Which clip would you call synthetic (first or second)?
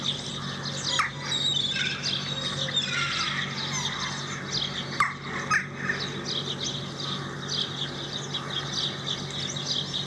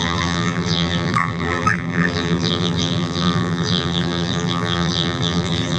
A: second